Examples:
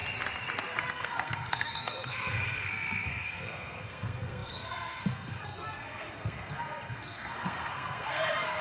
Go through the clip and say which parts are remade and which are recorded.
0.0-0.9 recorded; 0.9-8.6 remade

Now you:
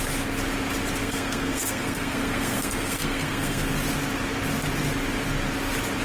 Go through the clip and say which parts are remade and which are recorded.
0.0-1.0 recorded; 1.0-3.7 remade; 3.7-6.0 recorded

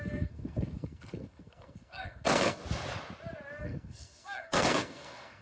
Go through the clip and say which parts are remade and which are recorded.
0.0-2.6 remade; 2.6-3.6 recorded; 3.6-5.4 remade

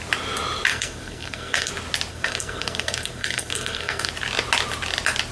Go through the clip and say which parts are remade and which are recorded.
0.0-0.7 recorded; 0.7-1.7 remade; 1.7-2.1 recorded; 2.1-4.1 remade; 4.1-5.3 recorded

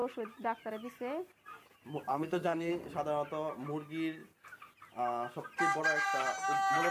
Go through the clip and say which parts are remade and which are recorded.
0.0-2.1 recorded; 2.1-2.7 remade; 2.7-6.9 recorded

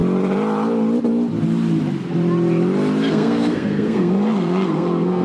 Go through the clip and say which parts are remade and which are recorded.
0.0-3.1 recorded; 3.1-5.2 remade

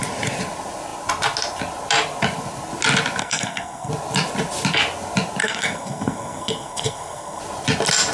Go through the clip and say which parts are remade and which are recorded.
0.0-3.2 recorded; 3.2-3.9 remade; 3.9-5.4 recorded; 5.4-7.4 remade; 7.4-8.1 recorded